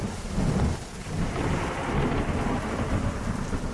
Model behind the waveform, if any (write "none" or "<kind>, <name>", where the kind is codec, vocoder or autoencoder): none